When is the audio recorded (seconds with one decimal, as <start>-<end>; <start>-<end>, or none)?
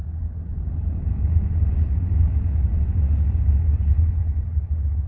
0.0-5.1